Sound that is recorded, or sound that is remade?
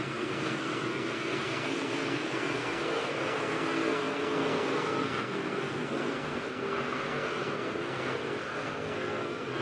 remade